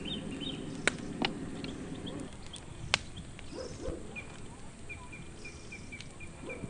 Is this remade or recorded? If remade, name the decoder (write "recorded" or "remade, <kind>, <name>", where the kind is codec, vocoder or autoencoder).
recorded